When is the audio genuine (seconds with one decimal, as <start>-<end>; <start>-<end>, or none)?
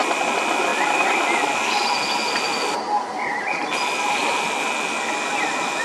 0.0-5.8